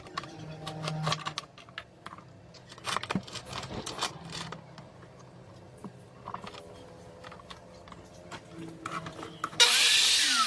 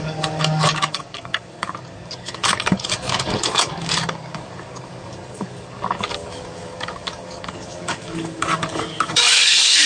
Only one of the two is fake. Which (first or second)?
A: second